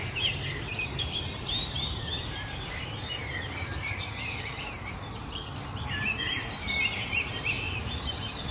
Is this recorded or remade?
remade